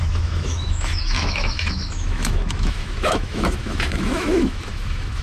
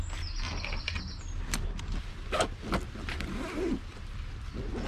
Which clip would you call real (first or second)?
second